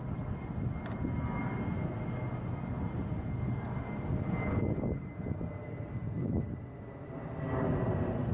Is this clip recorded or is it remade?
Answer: recorded